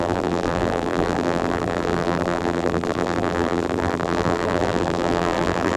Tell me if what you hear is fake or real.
fake